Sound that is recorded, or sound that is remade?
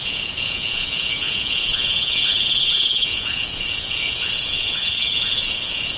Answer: remade